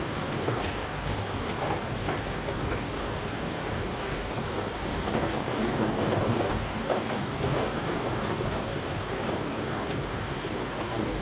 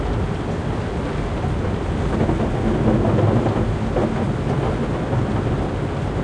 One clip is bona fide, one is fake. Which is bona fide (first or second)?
second